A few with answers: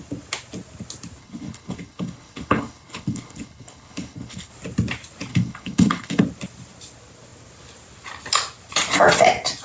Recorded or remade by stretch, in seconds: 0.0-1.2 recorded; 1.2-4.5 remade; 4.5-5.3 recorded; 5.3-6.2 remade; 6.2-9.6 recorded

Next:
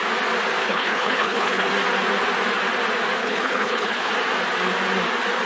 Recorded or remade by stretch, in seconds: 0.0-0.6 recorded; 0.6-1.7 remade; 1.7-3.2 recorded; 3.2-4.1 remade; 4.1-5.5 recorded

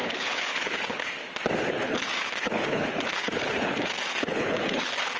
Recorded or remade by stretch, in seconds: 0.0-1.2 remade; 1.2-1.7 recorded; 1.7-5.2 remade

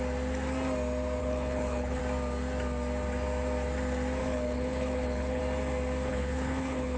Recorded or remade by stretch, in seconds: 0.0-1.2 recorded; 1.2-2.0 remade; 2.0-4.2 recorded; 4.2-5.4 remade; 5.4-6.1 recorded; 6.1-7.0 remade